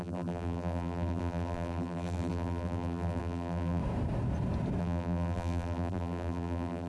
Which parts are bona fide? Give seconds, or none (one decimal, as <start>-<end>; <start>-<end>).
3.8-4.8